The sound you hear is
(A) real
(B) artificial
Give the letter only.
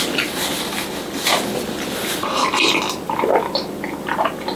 A